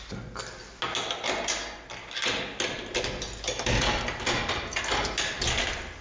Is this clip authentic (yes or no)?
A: yes